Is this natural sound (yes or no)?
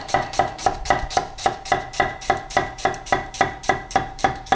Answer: no